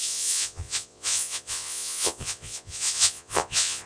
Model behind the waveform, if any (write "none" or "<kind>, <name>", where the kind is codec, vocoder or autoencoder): vocoder, Vocos